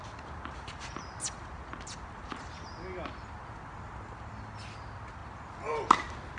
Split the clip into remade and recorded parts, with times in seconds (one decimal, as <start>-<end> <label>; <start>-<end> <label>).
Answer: 0.0-6.4 recorded